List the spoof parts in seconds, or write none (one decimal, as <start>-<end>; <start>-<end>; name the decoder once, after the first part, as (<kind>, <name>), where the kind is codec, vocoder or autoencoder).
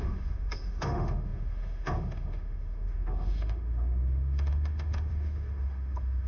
0.0-6.3 (autoencoder, DAC-VAE)